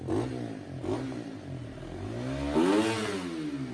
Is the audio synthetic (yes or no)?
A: no